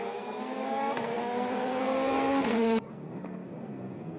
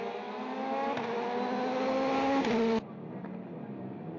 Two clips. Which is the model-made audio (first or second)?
first